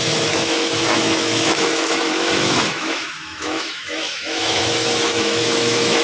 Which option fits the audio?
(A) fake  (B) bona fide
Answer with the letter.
A